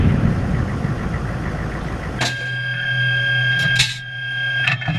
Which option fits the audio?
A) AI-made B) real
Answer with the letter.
B